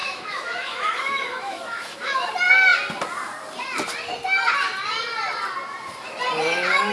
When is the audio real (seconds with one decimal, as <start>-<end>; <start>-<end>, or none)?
2.3-6.9